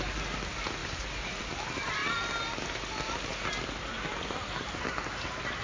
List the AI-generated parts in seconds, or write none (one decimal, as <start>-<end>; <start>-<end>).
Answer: none